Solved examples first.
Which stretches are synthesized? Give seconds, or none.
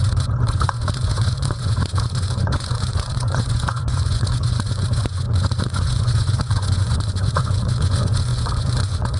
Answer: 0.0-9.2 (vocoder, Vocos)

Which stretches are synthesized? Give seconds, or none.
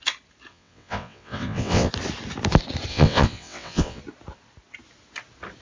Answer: 0.5-1.9 (vocoder, WaveNeXt); 2.9-4.0